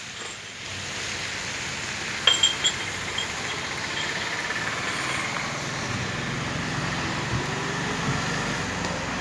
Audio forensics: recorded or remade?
recorded